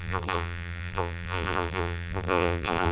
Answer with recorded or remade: remade